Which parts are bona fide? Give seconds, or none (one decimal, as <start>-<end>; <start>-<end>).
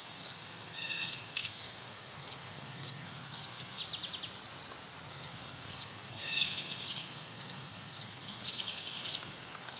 3.8-5.1